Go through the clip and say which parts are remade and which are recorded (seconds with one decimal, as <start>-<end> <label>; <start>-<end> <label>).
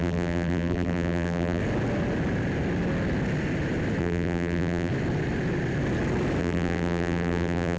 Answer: 0.0-1.6 remade; 1.6-4.0 recorded; 4.0-4.9 remade; 4.9-6.4 recorded; 6.4-7.8 remade